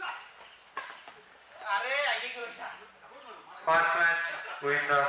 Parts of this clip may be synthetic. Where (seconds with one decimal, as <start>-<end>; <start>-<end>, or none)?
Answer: none